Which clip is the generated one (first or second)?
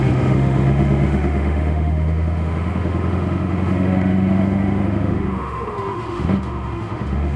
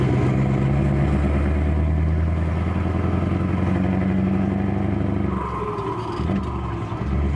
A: first